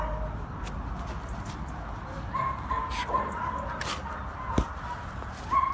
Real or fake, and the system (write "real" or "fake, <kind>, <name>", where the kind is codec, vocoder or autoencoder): real